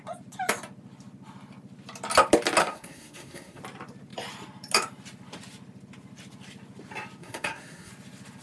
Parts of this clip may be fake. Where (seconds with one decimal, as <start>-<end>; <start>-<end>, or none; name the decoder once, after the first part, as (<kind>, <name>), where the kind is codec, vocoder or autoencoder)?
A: 2.6-3.6 (codec, SNAC); 7.2-7.9

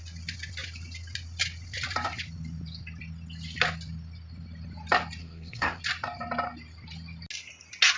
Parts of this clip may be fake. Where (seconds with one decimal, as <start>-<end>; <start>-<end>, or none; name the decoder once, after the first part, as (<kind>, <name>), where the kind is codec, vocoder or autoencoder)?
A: 5.2-5.8 (codec, SNAC)

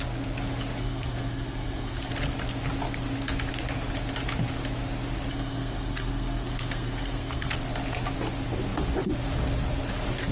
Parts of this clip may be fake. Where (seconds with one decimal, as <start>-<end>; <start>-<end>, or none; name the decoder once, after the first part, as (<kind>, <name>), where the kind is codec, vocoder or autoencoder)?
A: 0.8-2.1 (codec, SNAC); 5.3-7.5

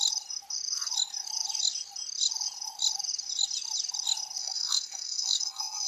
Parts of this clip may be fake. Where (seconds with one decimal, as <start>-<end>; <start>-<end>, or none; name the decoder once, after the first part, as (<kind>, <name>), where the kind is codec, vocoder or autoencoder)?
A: 4.4-5.9 (codec, SNAC)

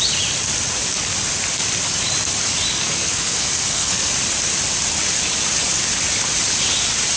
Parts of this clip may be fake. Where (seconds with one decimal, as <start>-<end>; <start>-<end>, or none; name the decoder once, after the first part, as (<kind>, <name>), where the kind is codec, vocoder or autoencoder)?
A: 2.7-4.1 (codec, SNAC)